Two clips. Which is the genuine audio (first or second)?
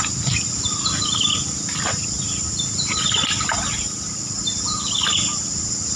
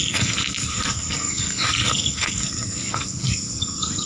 first